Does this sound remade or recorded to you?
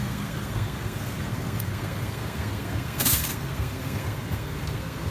remade